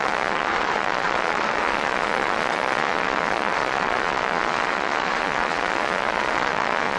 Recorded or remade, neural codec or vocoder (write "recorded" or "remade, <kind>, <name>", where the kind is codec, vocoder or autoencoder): remade, vocoder, Vocos